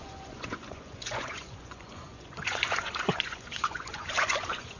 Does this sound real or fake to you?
fake